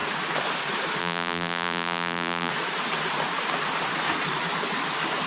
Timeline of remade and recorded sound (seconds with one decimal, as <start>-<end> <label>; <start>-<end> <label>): 0.0-1.0 recorded; 1.0-2.5 remade; 2.5-5.3 recorded